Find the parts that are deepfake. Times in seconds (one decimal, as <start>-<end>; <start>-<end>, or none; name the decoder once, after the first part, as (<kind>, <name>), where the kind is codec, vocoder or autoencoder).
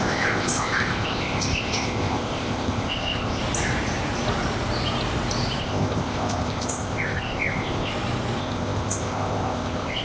0.0-3.4 (codec, ZipCodec); 5.6-7.9; 8.4-10.0